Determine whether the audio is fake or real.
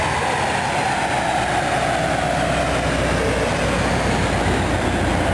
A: real